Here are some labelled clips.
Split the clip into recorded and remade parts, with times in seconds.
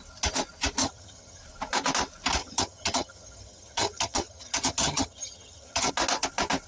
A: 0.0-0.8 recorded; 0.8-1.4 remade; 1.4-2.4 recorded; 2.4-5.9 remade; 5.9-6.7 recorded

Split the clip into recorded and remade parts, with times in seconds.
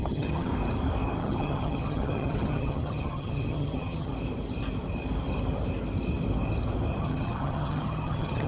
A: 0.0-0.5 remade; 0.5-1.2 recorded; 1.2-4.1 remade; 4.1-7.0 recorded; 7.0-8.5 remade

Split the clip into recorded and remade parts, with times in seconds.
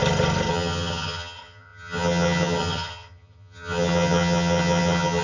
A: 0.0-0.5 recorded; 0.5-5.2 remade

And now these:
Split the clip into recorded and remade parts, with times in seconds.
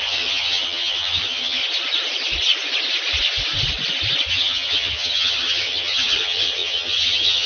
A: 0.0-1.6 remade; 1.6-4.3 recorded; 4.3-7.5 remade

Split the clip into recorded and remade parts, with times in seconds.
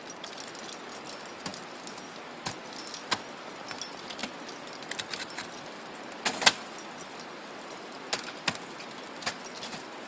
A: 0.0-10.1 recorded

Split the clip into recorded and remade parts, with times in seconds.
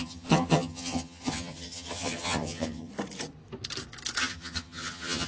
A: 0.0-2.9 remade; 2.9-4.2 recorded; 4.2-5.3 remade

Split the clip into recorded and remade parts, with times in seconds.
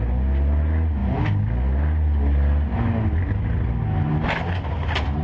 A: 0.0-5.2 recorded